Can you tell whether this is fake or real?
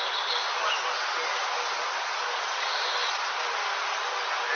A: real